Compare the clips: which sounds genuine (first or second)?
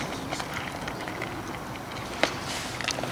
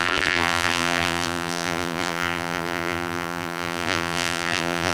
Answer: first